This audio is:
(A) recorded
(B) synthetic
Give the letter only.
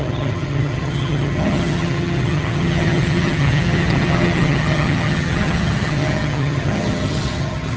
B